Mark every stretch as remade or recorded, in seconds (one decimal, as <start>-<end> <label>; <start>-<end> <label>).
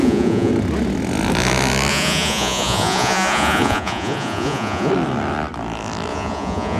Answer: 0.0-0.5 remade; 0.5-1.9 recorded; 1.9-4.9 remade; 4.9-6.1 recorded; 6.1-6.8 remade